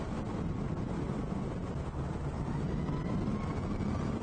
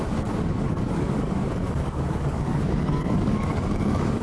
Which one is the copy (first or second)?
second